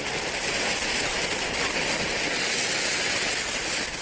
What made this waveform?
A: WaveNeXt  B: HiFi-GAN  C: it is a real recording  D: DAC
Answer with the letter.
C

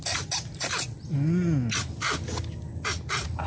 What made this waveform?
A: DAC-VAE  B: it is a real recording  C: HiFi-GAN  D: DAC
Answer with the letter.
B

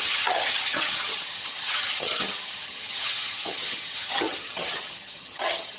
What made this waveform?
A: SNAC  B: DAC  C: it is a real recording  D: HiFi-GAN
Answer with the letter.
D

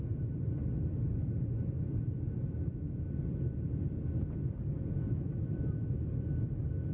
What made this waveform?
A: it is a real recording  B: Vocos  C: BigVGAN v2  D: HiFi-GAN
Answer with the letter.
A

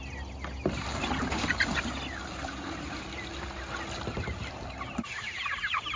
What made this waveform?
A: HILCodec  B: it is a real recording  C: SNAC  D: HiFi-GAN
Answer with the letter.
B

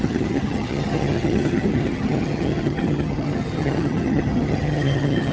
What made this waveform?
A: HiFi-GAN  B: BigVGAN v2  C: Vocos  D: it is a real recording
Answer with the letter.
A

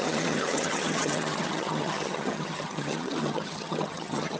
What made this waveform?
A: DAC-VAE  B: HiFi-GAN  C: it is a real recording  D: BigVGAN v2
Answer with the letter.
B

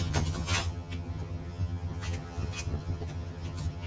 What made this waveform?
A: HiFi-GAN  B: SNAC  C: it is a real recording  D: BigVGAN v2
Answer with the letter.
A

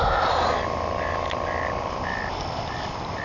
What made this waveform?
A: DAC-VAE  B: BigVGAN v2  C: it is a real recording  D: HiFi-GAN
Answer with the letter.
C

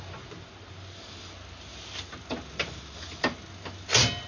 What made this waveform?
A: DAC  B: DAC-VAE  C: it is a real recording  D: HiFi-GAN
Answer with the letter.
C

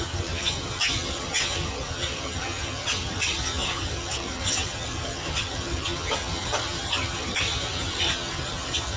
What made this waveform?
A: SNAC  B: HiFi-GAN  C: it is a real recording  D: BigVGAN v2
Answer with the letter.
B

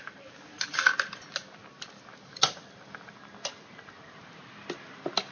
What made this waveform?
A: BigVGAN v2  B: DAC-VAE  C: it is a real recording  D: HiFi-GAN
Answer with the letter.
C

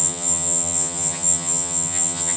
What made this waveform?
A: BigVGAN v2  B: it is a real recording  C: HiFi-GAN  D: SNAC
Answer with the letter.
C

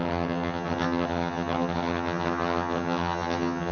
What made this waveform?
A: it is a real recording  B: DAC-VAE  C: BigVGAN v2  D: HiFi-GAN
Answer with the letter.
D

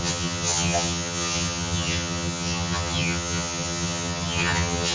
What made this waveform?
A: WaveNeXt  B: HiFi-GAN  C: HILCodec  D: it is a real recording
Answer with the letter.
B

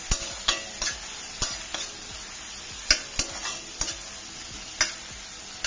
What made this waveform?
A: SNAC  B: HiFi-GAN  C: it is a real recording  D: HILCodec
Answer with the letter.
C